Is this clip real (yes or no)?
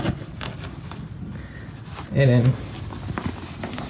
yes